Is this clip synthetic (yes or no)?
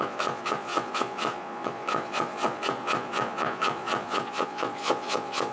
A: yes